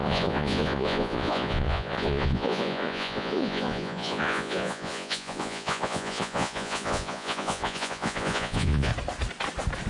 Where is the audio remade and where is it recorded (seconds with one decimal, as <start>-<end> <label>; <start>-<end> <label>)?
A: 0.0-8.9 remade; 8.9-9.9 recorded